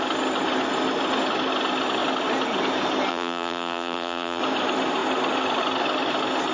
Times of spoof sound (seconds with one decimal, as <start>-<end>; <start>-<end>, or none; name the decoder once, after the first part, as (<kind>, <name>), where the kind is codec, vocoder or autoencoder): 3.1-4.4 (vocoder, BigVGAN v2)